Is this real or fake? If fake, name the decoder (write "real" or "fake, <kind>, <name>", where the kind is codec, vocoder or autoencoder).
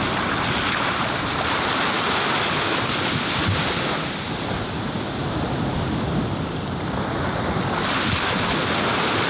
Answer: real